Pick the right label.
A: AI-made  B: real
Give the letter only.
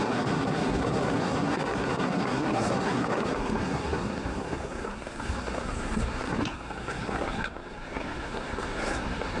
A